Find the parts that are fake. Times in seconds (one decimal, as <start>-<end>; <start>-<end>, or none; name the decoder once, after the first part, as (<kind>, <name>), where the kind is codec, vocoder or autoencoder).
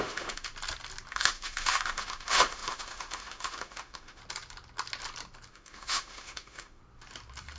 0.0-0.5 (autoencoder, DAC-VAE); 1.1-4.2; 5.5-6.8